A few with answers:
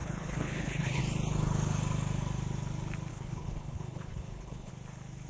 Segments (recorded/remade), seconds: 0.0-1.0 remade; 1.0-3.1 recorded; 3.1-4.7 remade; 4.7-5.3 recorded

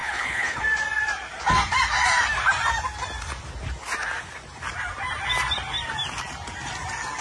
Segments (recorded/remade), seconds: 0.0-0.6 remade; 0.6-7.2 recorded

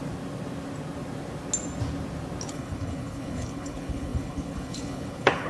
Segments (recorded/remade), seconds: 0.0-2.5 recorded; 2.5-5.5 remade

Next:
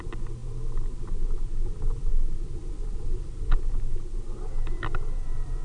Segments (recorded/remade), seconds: 0.0-5.6 recorded

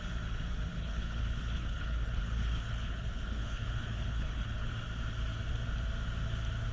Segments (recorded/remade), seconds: 0.0-0.7 recorded; 0.7-4.7 remade; 4.7-6.7 recorded